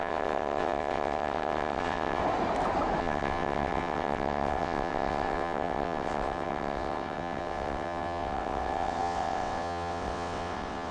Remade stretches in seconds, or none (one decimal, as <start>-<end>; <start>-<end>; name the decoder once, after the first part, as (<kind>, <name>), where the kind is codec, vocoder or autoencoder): 0.0-2.2 (vocoder, WaveNeXt); 3.0-10.9